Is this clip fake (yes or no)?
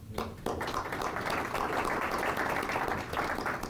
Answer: yes